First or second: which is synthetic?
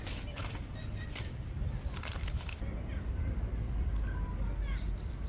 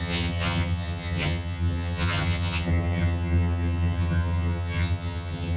second